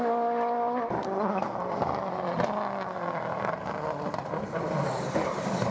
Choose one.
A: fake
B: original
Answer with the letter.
A